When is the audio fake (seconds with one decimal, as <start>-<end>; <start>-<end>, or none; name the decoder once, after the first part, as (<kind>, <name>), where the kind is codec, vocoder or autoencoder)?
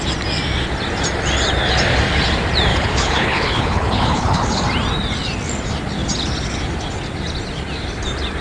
2.7-4.6 (codec, HILCodec)